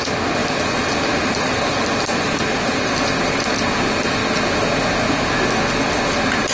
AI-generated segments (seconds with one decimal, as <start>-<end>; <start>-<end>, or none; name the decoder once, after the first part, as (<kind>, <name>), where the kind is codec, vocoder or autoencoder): 0.4-2.9 (vocoder, BigVGAN v2)